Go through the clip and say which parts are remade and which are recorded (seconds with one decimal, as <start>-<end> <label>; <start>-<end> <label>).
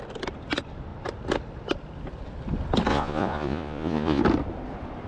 0.0-2.9 recorded; 2.9-4.2 remade; 4.2-5.1 recorded